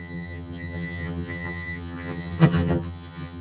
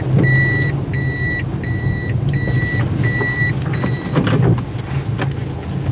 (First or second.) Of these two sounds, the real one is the second